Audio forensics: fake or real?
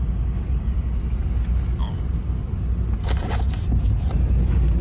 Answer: real